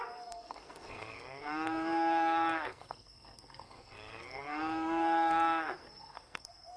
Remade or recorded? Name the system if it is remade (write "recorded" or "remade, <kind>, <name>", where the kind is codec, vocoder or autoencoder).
remade, codec, SNAC